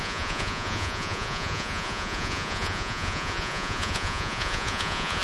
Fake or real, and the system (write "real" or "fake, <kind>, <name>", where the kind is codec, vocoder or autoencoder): fake, vocoder, Vocos